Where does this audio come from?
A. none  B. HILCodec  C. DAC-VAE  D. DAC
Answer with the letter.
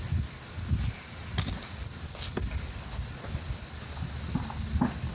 A